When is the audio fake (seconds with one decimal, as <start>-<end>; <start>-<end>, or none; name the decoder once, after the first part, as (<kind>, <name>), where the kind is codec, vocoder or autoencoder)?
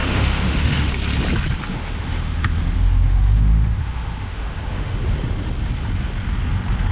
0.0-0.9 (autoencoder, DAC-VAE); 1.7-5.0